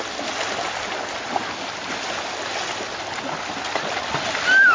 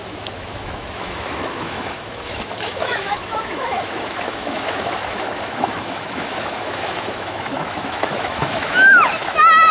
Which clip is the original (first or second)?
first